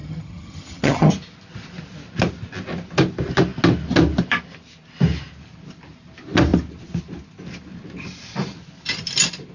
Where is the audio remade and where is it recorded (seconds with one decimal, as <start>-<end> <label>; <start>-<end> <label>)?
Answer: 0.0-1.1 remade; 1.1-9.5 recorded